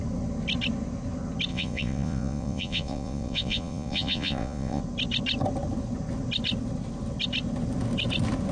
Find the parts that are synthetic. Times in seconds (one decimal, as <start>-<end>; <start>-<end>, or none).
1.5-4.8